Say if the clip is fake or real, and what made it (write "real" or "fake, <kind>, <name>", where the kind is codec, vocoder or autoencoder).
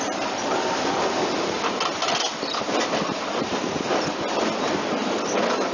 real